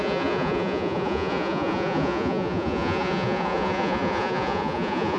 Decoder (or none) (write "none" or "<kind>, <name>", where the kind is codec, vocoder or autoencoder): vocoder, Vocos